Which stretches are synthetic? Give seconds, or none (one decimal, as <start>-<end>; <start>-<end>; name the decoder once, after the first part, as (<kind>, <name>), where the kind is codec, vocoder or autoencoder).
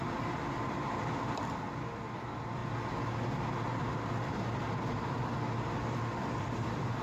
0.0-2.6 (vocoder, BigVGAN v2); 3.8-7.0